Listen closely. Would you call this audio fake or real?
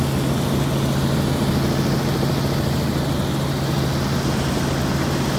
real